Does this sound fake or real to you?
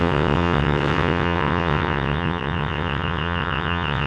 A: fake